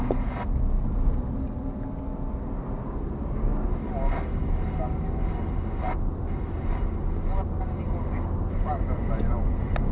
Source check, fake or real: real